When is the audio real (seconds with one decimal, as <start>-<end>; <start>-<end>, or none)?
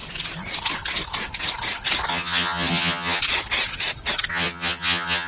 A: 0.0-2.1; 3.2-4.3